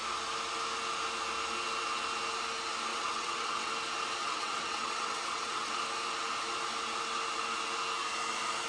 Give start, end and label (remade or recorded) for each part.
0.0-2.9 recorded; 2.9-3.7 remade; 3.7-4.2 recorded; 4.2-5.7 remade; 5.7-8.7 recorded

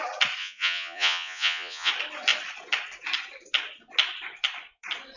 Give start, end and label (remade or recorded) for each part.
0.0-0.4 recorded; 0.4-1.9 remade; 1.9-5.2 recorded

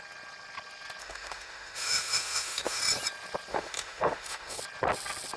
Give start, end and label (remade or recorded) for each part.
0.0-1.0 recorded; 1.0-2.8 remade; 2.8-3.5 recorded; 3.5-4.6 remade; 4.6-5.4 recorded

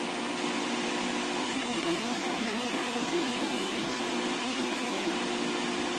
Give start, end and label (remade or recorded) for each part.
0.0-1.4 recorded; 1.4-4.0 remade; 4.0-4.4 recorded; 4.4-5.1 remade; 5.1-6.0 recorded

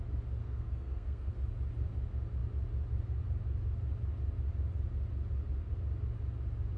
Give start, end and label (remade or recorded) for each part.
0.0-0.4 recorded; 0.4-1.3 remade; 1.3-6.8 recorded

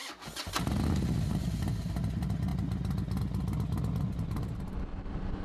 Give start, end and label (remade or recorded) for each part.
0.0-5.4 recorded

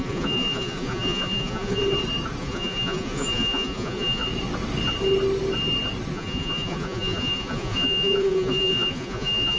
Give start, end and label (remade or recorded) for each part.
0.0-1.8 remade; 1.8-2.4 recorded; 2.4-4.2 remade; 4.2-6.1 recorded; 6.1-9.6 remade

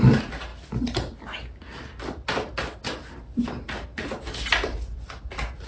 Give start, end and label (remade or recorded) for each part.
0.0-5.7 recorded